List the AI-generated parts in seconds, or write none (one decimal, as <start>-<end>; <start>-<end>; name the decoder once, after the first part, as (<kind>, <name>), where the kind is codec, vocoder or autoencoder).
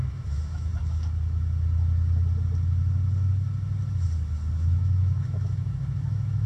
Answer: 0.0-0.7 (autoencoder, DAC-VAE); 4.6-6.5